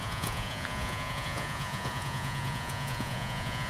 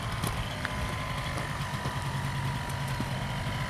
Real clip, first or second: second